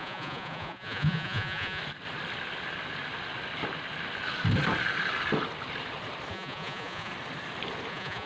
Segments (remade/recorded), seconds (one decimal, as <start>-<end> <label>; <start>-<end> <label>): 0.0-1.8 remade; 1.8-6.3 recorded; 6.3-7.1 remade; 7.1-7.9 recorded; 7.9-8.3 remade

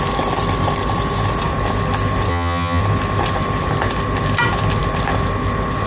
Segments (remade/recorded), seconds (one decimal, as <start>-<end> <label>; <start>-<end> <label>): 0.0-2.3 recorded; 2.3-2.8 remade; 2.8-5.9 recorded

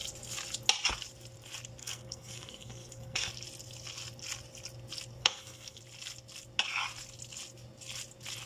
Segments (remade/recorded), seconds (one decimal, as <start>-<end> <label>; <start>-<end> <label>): 0.0-1.8 recorded; 1.8-3.3 remade; 3.3-5.2 recorded; 5.2-5.8 remade; 5.8-8.5 recorded

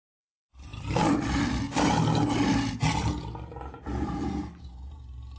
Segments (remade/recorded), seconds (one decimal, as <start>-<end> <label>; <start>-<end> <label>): 0.0-5.4 recorded

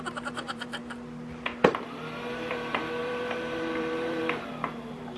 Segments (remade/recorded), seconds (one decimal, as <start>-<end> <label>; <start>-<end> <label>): 0.0-0.8 remade; 0.8-2.5 recorded; 2.5-5.2 remade

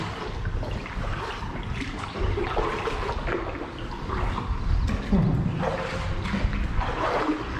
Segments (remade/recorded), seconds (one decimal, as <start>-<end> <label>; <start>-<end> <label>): 0.0-7.6 recorded

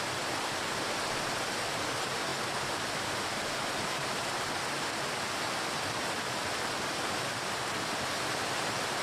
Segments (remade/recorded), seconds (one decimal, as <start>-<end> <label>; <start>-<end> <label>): 0.0-9.0 recorded